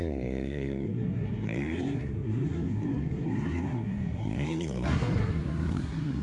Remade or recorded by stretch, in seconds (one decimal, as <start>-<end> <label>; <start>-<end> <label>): 0.0-6.2 remade